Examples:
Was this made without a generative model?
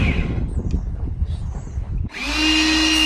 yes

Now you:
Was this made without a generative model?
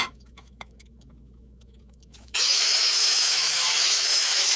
no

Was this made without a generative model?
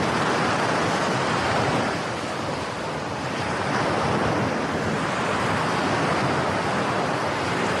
yes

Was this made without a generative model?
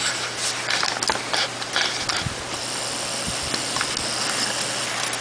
yes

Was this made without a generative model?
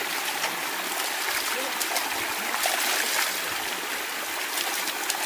yes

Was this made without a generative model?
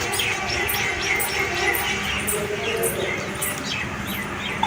yes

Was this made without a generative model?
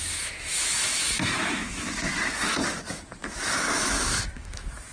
no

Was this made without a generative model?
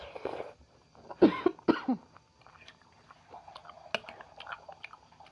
yes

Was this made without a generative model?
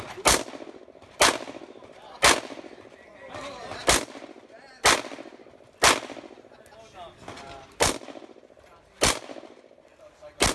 yes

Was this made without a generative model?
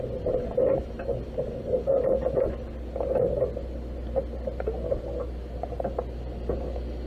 yes